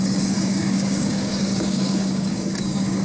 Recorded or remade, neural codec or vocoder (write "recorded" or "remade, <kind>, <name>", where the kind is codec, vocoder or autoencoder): remade, codec, DAC